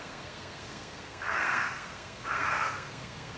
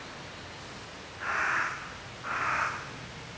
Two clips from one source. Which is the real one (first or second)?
second